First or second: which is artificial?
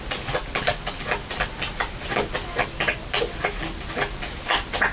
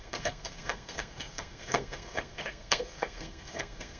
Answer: second